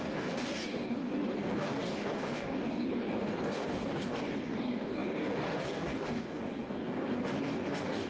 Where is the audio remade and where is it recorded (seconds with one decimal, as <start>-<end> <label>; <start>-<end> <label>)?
0.0-8.1 remade

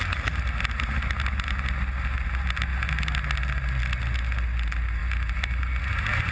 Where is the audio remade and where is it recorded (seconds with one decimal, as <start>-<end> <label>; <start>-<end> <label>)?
0.0-6.3 recorded

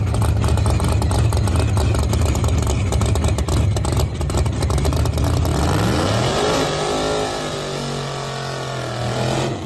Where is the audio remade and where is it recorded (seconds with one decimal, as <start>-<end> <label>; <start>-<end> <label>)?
0.0-9.7 recorded

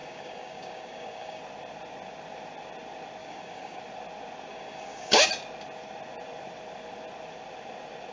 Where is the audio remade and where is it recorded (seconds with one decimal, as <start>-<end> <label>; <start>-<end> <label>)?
0.0-1.4 remade; 1.4-3.2 recorded; 3.2-3.8 remade; 3.8-4.5 recorded; 4.5-5.3 remade; 5.3-8.1 recorded

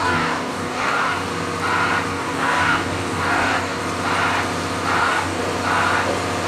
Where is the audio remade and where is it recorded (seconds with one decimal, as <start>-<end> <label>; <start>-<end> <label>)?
0.0-1.3 remade; 1.3-2.1 recorded; 2.1-3.8 remade; 3.8-5.0 recorded; 5.0-5.4 remade; 5.4-6.5 recorded